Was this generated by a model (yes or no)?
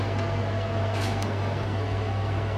yes